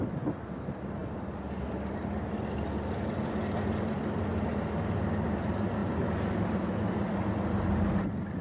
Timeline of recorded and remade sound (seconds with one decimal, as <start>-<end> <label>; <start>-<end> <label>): 0.0-8.4 recorded